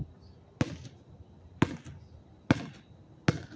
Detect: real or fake real